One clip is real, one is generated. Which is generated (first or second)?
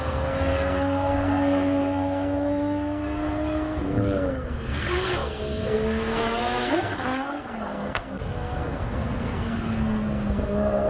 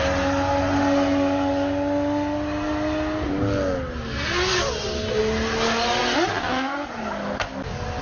first